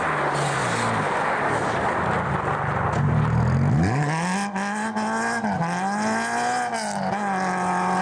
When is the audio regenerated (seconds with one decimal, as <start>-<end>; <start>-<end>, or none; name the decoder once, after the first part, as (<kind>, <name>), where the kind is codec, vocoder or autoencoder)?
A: none